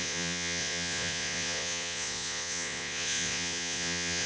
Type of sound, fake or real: fake